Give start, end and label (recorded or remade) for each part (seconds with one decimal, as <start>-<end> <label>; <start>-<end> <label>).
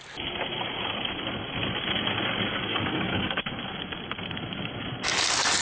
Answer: 0.0-2.7 recorded; 2.7-3.4 remade; 3.4-5.6 recorded